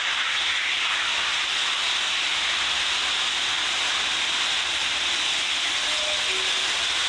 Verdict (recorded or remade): recorded